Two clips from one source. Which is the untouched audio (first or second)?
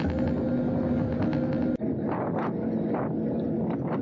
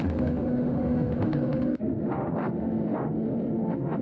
first